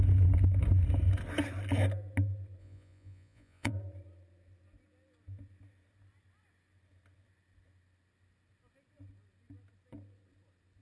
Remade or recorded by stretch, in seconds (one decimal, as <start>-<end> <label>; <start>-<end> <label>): 0.0-2.6 recorded; 2.6-3.7 remade; 3.7-10.8 recorded